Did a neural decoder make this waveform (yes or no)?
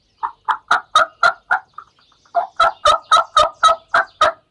no